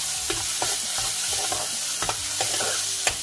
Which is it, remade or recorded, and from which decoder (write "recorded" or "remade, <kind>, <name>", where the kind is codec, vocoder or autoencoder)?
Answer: recorded